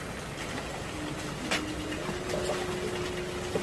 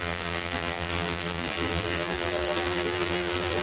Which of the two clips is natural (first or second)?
first